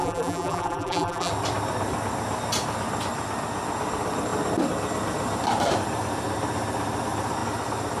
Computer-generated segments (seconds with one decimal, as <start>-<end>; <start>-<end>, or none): 0.0-1.3